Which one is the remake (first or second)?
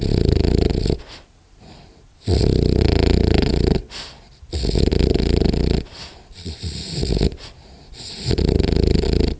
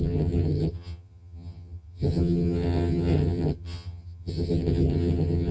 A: second